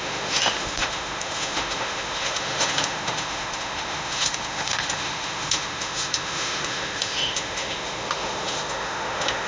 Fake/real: fake